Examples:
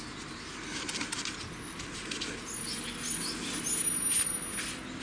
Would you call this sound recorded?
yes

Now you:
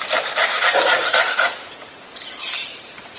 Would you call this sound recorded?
no